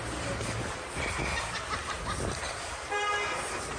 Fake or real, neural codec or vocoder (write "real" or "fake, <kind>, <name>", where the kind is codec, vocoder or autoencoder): real